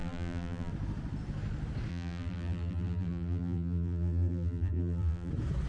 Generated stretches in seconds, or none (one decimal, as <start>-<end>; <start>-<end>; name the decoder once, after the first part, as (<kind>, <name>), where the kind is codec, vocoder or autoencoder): 0.0-0.7 (vocoder, BigVGAN v2); 1.9-5.3